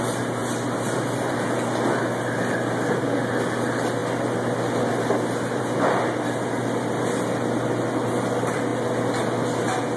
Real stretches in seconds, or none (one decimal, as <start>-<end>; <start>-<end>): 0.0-10.0